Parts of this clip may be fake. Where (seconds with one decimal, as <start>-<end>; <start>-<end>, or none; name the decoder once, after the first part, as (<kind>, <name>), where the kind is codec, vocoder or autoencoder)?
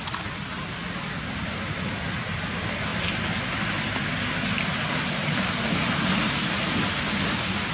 none